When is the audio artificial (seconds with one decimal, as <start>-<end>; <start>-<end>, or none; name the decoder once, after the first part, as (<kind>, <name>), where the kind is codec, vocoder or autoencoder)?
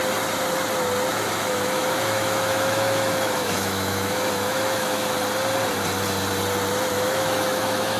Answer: 1.1-5.2 (autoencoder, DAC-VAE); 6.9-8.0